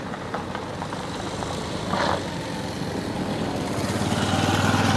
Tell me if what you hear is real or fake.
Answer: real